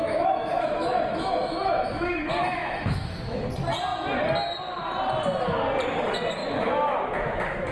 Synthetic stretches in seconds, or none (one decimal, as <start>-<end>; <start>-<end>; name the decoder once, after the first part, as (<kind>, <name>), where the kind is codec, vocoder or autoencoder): 0.0-3.5 (autoencoder, DAC-VAE); 6.4-7.7